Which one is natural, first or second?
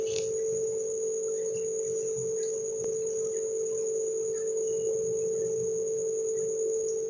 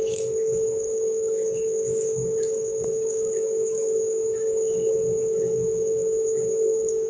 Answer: first